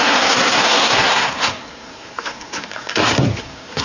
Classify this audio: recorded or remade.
remade